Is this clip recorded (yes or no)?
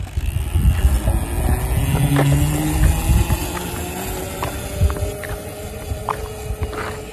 yes